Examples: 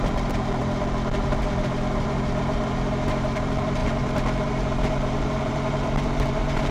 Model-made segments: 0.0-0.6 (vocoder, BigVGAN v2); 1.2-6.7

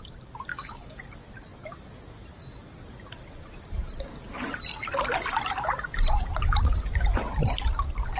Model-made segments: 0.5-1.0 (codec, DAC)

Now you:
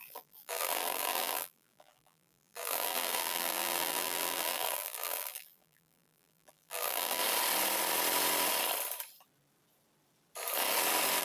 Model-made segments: 0.0-7.2 (vocoder, BigVGAN v2)

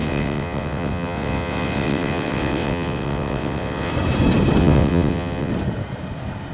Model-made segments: 0.0-3.9 (vocoder, WaveNeXt); 4.6-5.5

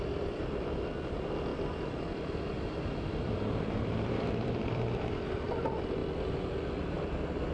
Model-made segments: 0.0-6.0 (vocoder, BigVGAN v2); 7.0-7.5

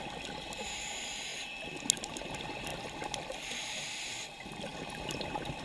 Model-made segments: 2.7-3.5 (vocoder, BigVGAN v2); 4.7-5.6